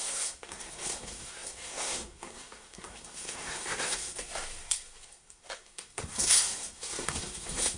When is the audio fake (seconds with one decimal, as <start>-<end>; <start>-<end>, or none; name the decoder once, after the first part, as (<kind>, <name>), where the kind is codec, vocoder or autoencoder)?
0.0-7.8 (codec, SNAC)